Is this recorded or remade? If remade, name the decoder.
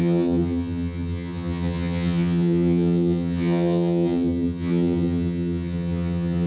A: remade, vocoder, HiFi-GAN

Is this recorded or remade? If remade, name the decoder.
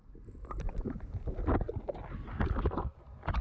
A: recorded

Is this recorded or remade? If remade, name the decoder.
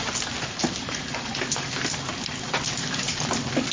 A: recorded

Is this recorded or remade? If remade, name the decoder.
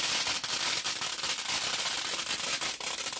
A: recorded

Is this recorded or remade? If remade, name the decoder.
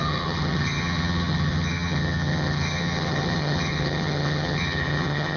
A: remade, vocoder, HiFi-GAN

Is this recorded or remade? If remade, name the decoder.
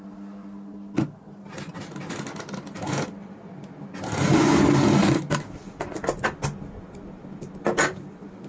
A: recorded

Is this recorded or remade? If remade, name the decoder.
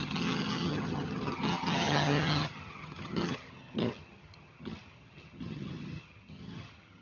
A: remade, vocoder, HiFi-GAN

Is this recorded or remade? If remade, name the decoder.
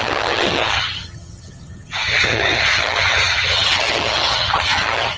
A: remade, vocoder, HiFi-GAN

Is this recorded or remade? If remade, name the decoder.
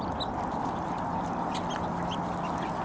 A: recorded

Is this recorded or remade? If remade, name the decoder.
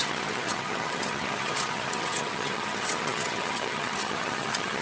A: remade, vocoder, HiFi-GAN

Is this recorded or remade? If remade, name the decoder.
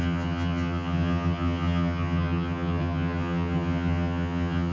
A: remade, vocoder, HiFi-GAN